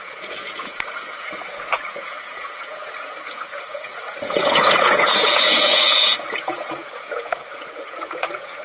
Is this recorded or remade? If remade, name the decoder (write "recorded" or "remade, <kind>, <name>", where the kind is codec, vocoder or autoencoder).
remade, vocoder, Vocos